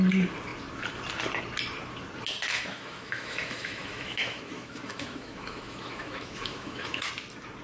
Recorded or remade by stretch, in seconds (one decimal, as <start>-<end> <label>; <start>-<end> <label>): 0.0-2.5 recorded; 2.5-7.1 remade; 7.1-7.6 recorded